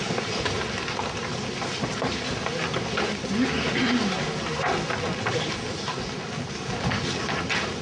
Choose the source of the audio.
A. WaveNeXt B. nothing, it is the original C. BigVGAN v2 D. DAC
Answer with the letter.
B